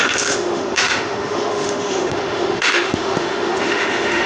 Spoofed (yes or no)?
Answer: yes